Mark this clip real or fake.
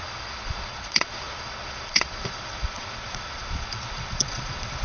fake